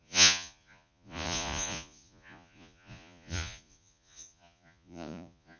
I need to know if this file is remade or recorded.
remade